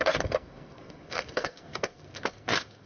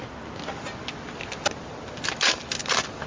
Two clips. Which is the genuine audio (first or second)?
second